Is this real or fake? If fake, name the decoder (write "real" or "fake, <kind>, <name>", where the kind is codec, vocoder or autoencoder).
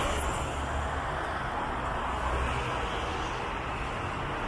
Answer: real